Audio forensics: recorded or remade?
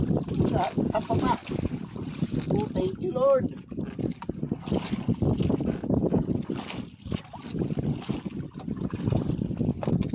recorded